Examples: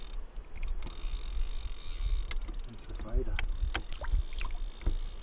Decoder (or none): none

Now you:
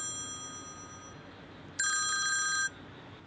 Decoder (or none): none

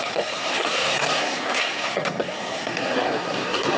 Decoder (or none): codec, SNAC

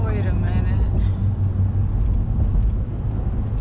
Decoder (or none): none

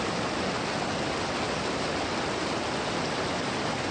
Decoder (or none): none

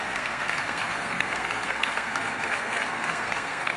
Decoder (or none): codec, SNAC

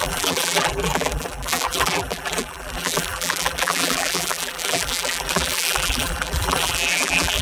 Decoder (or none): vocoder, BigVGAN v2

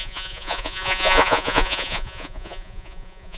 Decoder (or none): vocoder, Vocos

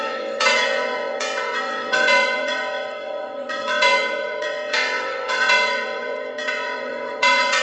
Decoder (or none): vocoder, WaveNeXt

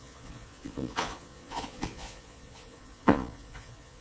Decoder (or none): vocoder, Vocos